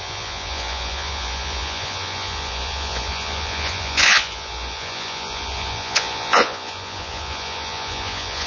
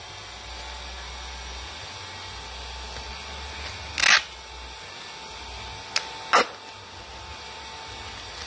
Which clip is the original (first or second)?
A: second